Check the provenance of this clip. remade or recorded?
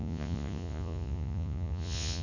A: remade